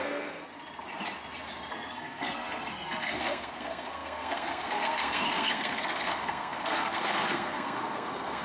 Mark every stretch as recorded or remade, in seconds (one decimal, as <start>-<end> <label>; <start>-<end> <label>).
0.0-0.5 remade; 0.5-1.7 recorded; 1.7-8.4 remade